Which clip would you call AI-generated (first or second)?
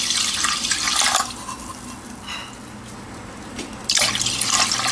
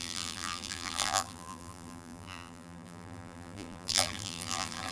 second